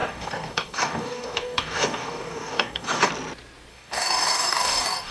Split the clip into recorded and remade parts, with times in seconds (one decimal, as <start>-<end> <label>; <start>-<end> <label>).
0.0-3.1 remade; 3.1-3.7 recorded; 3.7-5.1 remade

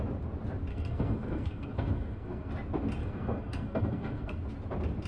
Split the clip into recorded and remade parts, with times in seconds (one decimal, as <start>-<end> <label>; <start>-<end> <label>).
0.0-0.7 recorded; 0.7-2.5 remade; 2.5-3.0 recorded; 3.0-4.4 remade; 4.4-5.1 recorded

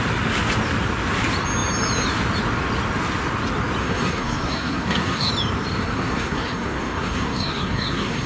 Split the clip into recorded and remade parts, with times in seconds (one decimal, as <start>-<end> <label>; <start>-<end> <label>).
0.0-3.8 recorded; 3.8-5.3 remade; 5.3-5.8 recorded; 5.8-8.3 remade